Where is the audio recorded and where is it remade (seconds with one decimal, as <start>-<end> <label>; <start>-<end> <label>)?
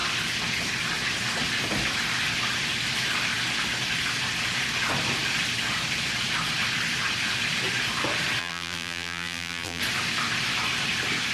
0.0-8.4 recorded; 8.4-9.8 remade; 9.8-11.3 recorded